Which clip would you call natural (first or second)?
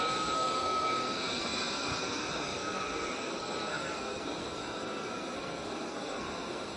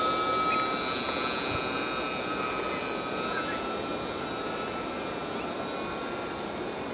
second